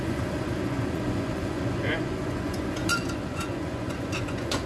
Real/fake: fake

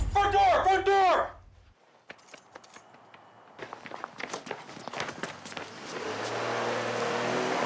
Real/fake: real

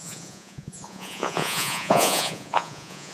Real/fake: fake